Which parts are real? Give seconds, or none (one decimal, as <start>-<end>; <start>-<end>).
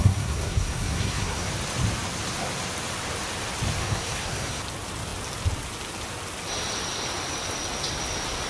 1.5-3.8; 4.6-8.5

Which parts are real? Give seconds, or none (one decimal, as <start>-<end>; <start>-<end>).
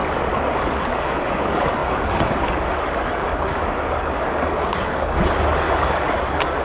0.0-0.6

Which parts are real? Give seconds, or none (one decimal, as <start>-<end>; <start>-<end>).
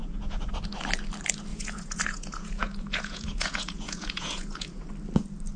0.5-1.5; 4.9-5.6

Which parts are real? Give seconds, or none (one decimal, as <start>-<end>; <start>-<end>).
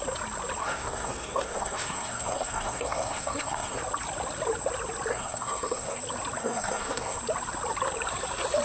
0.0-0.6; 3.8-5.1; 6.0-6.4; 7.2-8.6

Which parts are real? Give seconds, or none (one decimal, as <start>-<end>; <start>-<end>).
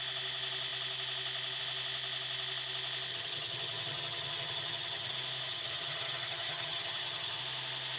0.0-3.1; 5.1-5.5; 7.4-8.0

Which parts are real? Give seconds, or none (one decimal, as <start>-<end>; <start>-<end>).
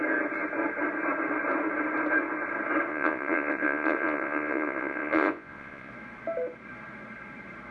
0.0-2.9; 5.9-7.7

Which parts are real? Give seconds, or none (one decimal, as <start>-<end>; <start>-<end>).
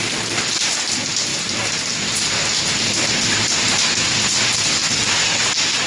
0.0-5.9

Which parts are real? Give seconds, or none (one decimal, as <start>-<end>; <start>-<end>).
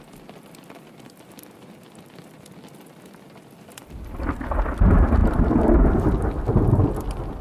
0.0-3.8; 4.5-5.2; 6.0-7.4